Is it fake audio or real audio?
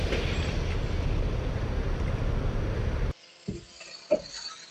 real